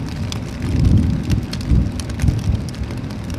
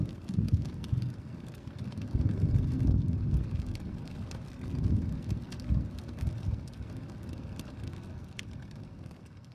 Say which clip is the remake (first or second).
second